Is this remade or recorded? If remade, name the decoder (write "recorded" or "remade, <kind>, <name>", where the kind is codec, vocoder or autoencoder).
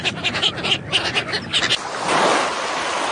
recorded